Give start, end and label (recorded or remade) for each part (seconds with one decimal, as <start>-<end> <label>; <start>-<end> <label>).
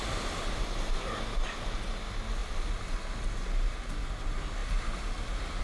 0.0-5.6 recorded